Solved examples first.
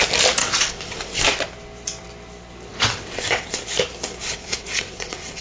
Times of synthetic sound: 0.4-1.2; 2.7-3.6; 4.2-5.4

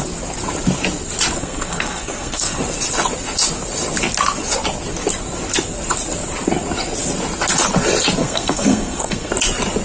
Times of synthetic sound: 1.4-2.6; 8.2-9.3

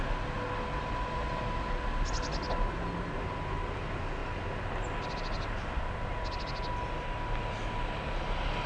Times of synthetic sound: none

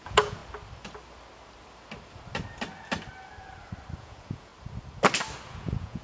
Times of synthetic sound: 0.0-0.4; 4.0-4.5; 5.5-6.0

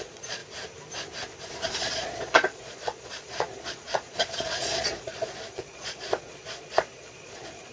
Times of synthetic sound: 0.0-0.4; 1.8-7.7